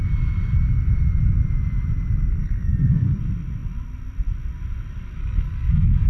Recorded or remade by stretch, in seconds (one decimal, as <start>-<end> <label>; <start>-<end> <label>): 0.0-2.3 recorded; 2.3-3.2 remade; 3.2-5.2 recorded; 5.2-6.1 remade